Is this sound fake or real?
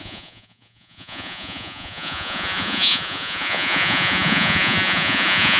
fake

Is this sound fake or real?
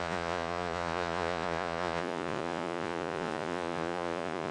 fake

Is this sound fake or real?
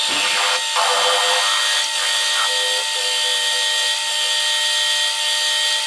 real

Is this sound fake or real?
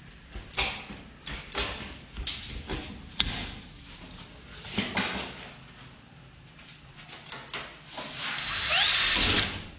real